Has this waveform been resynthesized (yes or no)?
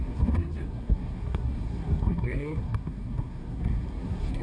yes